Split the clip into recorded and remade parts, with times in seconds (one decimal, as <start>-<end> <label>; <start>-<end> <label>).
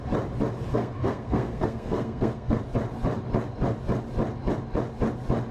0.0-0.7 recorded; 0.7-2.6 remade; 2.6-5.5 recorded